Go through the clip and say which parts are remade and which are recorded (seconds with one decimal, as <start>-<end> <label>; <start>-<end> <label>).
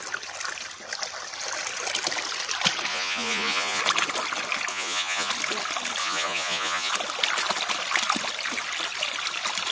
0.0-2.9 recorded; 2.9-3.8 remade; 3.8-4.7 recorded; 4.7-5.3 remade; 5.3-6.0 recorded; 6.0-6.9 remade; 6.9-9.7 recorded